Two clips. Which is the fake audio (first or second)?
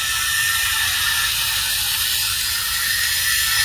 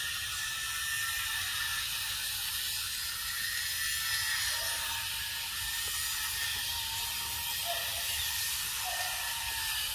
first